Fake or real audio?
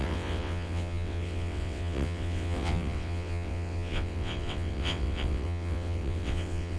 fake